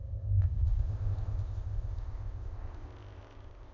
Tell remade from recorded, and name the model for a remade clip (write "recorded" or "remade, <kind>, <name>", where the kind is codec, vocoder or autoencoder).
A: remade, codec, ZipCodec